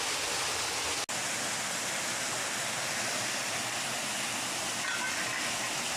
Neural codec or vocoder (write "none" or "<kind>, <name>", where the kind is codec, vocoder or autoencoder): none